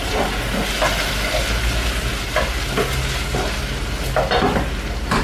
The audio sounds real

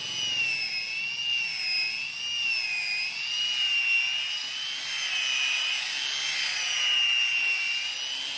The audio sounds real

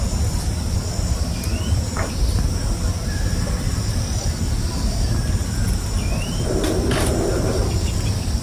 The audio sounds real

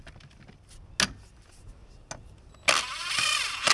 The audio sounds real